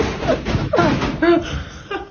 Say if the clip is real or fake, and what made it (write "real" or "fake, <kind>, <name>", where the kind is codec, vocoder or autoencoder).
real